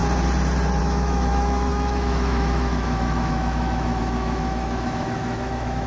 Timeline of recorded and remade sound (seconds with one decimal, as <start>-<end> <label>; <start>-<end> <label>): 0.0-0.8 recorded; 0.8-5.9 remade

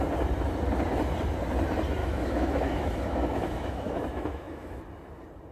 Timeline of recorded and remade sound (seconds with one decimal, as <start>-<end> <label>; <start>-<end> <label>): 0.0-2.0 recorded; 2.0-4.8 remade; 4.8-5.5 recorded

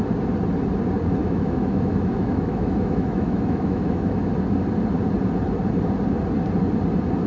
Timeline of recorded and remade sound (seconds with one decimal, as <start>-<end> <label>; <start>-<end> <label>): 0.0-1.2 recorded; 1.2-4.3 remade; 4.3-7.3 recorded

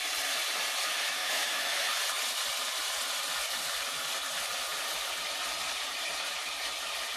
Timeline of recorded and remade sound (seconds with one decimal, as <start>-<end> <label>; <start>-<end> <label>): 0.0-1.2 recorded; 1.2-2.0 remade; 2.0-7.2 recorded

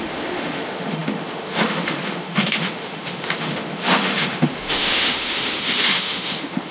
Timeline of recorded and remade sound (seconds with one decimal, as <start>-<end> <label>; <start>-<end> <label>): 0.0-6.7 remade

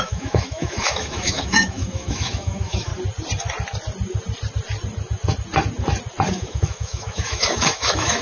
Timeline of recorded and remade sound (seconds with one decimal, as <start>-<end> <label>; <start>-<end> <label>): 0.0-2.9 remade; 2.9-6.3 recorded; 6.3-8.2 remade

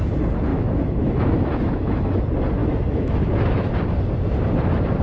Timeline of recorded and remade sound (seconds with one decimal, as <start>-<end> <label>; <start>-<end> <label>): 0.0-0.5 recorded; 0.5-2.2 remade; 2.2-2.6 recorded; 2.6-3.7 remade; 3.7-5.0 recorded

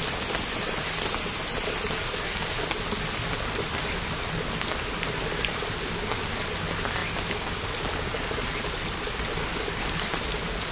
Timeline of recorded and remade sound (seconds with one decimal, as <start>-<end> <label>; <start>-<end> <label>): 0.0-10.7 recorded